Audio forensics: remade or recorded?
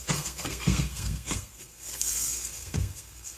remade